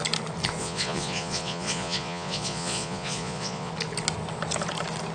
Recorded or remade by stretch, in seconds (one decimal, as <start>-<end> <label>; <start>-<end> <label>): 0.0-0.6 recorded; 0.6-3.7 remade; 3.7-5.1 recorded